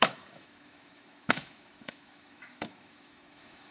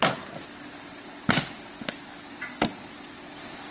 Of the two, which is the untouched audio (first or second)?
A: second